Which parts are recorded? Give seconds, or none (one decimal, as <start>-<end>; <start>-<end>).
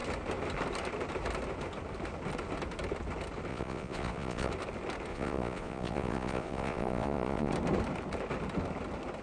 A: 0.0-3.5; 4.5-5.1; 7.5-9.2